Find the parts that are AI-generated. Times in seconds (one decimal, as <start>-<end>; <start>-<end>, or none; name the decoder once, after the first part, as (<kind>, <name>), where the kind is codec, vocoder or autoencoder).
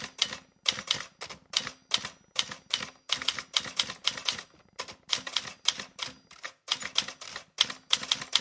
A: none